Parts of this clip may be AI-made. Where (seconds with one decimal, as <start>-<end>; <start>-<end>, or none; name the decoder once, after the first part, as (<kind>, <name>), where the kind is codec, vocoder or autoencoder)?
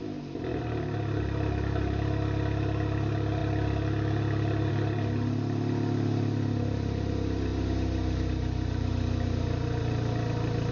none